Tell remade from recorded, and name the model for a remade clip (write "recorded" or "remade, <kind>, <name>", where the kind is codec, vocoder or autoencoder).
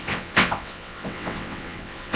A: remade, vocoder, WaveNeXt